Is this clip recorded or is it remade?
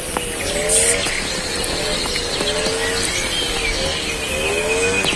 recorded